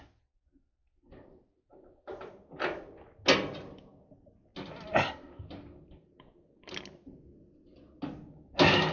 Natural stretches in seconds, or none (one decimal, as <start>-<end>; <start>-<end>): 0.0-8.9